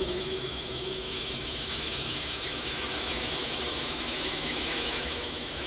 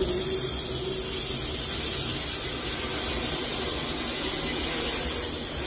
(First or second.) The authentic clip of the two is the second